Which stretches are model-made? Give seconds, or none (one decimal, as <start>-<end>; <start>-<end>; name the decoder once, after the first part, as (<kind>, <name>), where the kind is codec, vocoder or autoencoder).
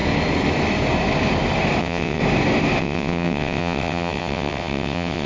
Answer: 1.8-2.2 (vocoder, WaveNeXt); 2.8-5.3